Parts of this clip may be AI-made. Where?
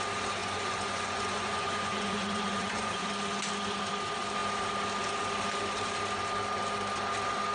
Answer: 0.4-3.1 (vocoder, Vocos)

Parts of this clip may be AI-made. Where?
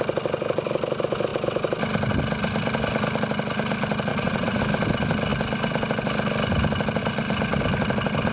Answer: 4.1-4.6 (vocoder, Vocos)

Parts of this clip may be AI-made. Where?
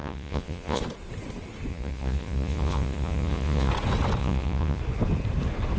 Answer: 0.0-0.8 (vocoder, Vocos); 1.7-3.7; 4.2-4.8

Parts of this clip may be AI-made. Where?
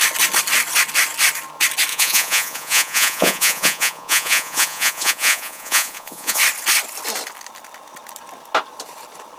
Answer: 1.9-6.4 (vocoder, Vocos)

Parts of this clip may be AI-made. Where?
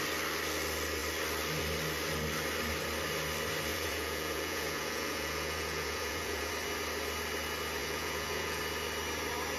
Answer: 3.7-6.5 (vocoder, Vocos); 7.8-8.6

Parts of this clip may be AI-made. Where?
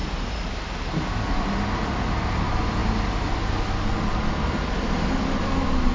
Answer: none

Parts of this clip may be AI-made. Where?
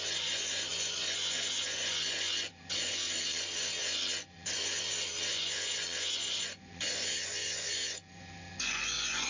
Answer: 0.0-9.3 (vocoder, Vocos)